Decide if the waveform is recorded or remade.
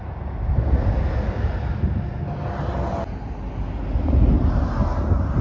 recorded